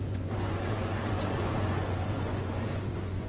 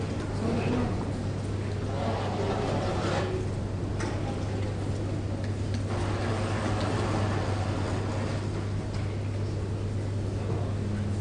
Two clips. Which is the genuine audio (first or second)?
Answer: second